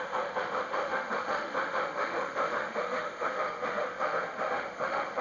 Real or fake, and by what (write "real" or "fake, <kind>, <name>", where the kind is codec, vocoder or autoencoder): fake, autoencoder, DAC-VAE